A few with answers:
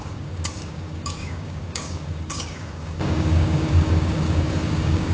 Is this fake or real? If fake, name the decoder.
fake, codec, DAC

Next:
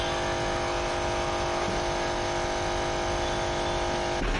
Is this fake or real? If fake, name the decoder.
real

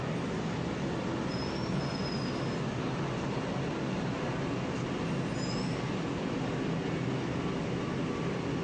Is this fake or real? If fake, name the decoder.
real